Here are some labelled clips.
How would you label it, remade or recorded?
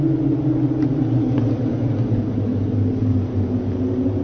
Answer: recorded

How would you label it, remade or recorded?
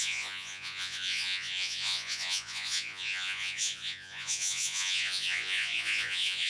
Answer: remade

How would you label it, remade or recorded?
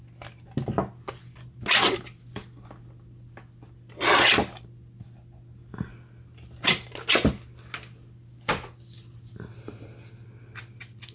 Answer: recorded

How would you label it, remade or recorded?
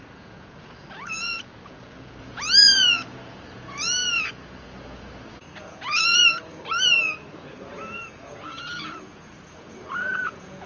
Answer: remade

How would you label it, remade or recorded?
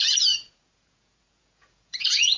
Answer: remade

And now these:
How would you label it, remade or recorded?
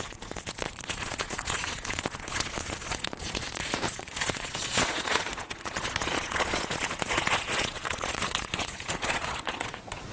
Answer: remade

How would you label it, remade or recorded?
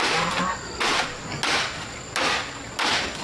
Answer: recorded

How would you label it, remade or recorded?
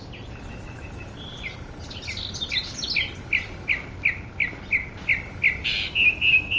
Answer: recorded